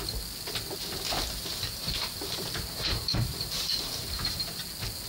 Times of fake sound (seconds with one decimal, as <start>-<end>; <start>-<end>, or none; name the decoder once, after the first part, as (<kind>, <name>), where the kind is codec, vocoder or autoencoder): 1.5-4.6 (vocoder, BigVGAN v2)